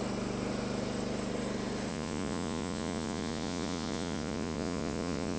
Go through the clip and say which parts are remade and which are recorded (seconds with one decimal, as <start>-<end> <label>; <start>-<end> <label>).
0.0-1.9 recorded; 1.9-5.4 remade